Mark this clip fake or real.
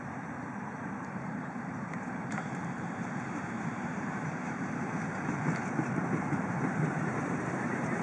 fake